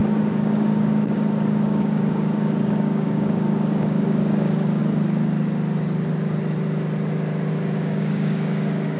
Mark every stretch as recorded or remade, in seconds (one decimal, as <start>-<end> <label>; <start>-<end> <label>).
0.0-4.8 remade; 4.8-7.5 recorded; 7.5-9.0 remade